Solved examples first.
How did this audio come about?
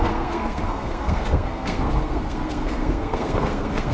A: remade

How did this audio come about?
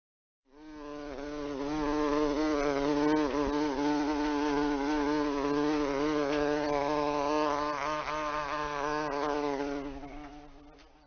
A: recorded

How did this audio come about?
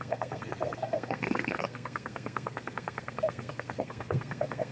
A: remade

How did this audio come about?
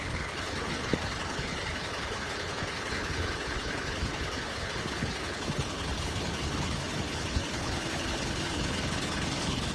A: remade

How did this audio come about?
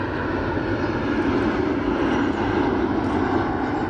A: recorded